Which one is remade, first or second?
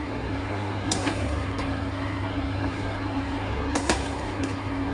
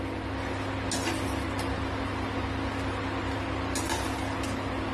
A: first